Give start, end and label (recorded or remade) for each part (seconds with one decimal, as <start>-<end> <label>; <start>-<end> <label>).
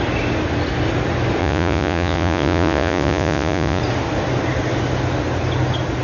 0.0-1.4 recorded; 1.4-3.8 remade; 3.8-6.0 recorded